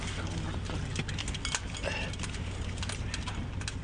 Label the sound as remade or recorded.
recorded